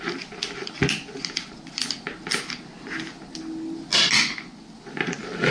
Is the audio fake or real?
real